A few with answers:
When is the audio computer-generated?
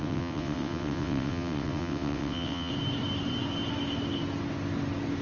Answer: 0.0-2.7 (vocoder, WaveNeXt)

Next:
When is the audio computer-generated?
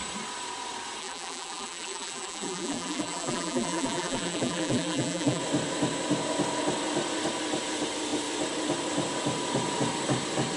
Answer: 1.0-5.4 (vocoder, BigVGAN v2)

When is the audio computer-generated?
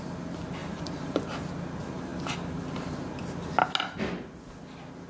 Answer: 0.6-1.2 (vocoder, BigVGAN v2)